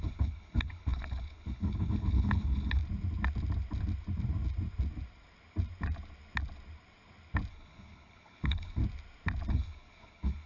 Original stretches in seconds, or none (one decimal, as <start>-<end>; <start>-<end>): 2.8-7.5; 8.8-9.5